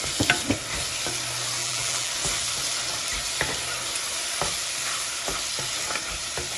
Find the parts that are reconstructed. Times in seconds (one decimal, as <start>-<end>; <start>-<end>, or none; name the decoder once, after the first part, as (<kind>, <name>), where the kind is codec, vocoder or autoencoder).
1.6-2.1 (vocoder, BigVGAN v2)